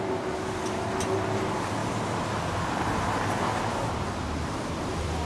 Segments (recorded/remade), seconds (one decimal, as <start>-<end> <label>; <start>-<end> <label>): 0.0-5.3 recorded